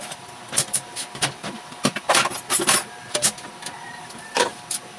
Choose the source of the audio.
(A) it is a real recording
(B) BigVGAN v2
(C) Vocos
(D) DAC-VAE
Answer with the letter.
A